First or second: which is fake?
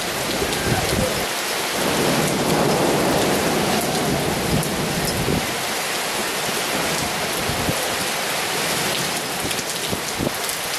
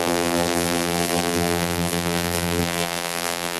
second